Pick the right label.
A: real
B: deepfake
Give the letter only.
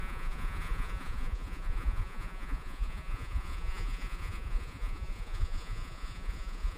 B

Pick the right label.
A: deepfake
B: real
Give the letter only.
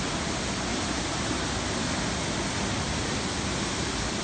B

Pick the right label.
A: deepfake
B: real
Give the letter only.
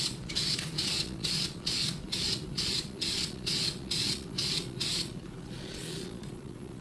A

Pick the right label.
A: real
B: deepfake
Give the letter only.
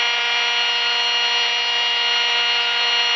A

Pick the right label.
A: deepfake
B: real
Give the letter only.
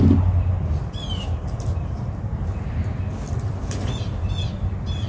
B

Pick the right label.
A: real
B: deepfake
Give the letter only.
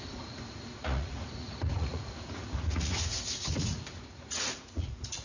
B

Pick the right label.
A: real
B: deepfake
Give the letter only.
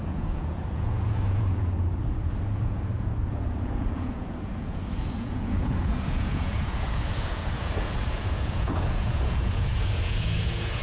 B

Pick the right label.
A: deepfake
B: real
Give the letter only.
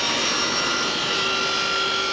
B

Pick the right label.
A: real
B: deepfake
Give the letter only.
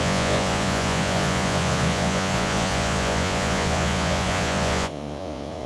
B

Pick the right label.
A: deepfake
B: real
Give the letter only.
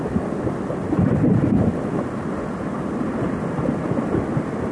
B